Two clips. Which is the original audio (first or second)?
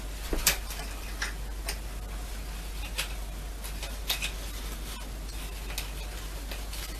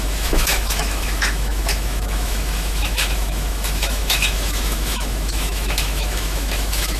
first